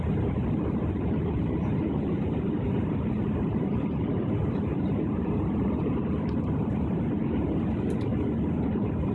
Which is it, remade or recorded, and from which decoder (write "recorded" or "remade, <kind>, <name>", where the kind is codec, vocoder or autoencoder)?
remade, vocoder, BigVGAN v2